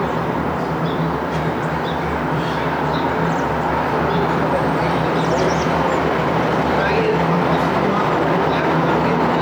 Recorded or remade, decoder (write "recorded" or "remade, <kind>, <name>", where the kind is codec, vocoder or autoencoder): remade, vocoder, BigVGAN v2